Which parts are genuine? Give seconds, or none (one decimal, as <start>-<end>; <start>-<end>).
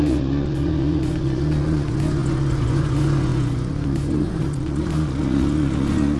none